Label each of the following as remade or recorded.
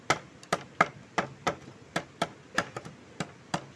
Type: recorded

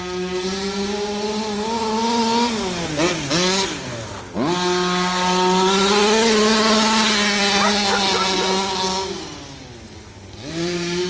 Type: recorded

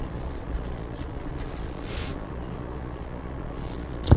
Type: remade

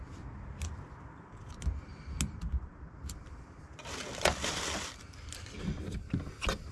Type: recorded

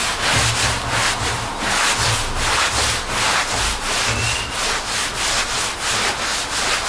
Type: recorded